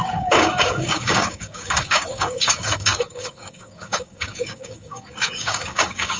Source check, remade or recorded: remade